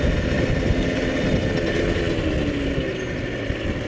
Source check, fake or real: real